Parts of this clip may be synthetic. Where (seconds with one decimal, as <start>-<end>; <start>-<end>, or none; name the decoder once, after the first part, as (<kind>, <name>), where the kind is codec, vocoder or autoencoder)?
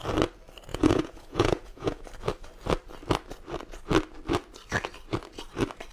0.7-2.0 (vocoder, Vocos)